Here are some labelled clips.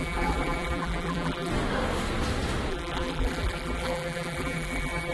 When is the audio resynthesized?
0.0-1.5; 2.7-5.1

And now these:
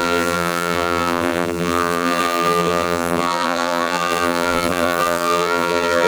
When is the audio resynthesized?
0.0-6.1

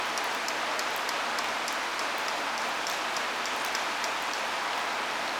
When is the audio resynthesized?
1.9-5.4

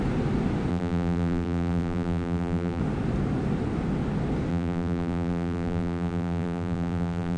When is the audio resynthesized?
0.7-2.8; 4.5-7.4

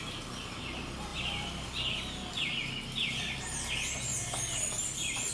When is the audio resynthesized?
1.1-3.4; 4.1-5.3

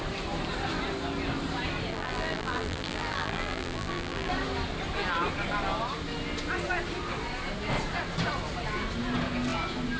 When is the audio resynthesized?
1.9-4.3

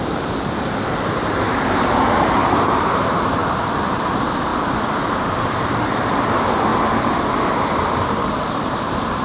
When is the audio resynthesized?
0.0-4.5; 6.1-6.7; 7.9-9.2